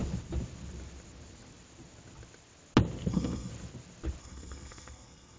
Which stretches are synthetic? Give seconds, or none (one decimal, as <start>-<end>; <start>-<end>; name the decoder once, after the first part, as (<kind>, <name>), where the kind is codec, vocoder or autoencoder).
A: 3.1-3.5 (codec, SNAC); 4.2-5.4